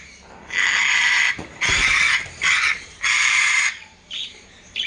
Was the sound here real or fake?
fake